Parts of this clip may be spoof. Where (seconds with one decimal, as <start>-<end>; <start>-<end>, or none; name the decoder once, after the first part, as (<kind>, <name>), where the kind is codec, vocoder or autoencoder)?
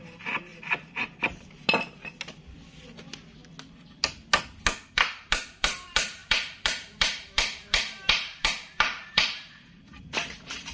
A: 0.0-0.5 (vocoder, BigVGAN v2); 4.9-10.7